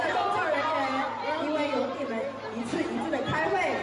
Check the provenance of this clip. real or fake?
real